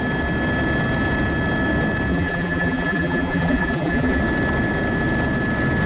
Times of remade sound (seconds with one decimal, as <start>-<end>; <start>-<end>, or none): 2.1-4.2